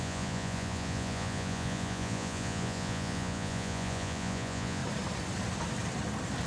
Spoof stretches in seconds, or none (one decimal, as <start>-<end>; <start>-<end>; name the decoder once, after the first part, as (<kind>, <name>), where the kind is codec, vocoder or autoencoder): 0.0-4.8 (vocoder, Vocos)